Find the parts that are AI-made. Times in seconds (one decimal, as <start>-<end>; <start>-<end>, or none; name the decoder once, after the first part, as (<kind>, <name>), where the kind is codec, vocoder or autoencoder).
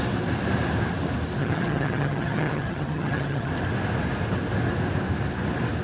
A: 1.4-3.5 (vocoder, HiFi-GAN)